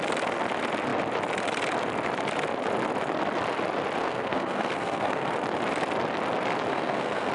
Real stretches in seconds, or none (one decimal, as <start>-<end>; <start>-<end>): 0.0-4.0; 5.3-6.7